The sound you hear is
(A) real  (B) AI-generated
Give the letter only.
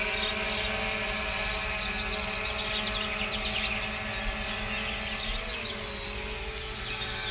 A